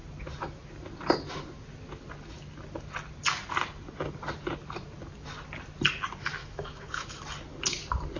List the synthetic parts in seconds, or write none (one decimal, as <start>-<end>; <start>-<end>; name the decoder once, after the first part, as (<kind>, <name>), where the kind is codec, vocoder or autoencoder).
6.4-7.2 (autoencoder, DAC-VAE)